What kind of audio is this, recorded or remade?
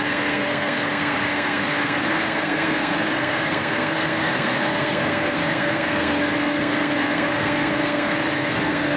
remade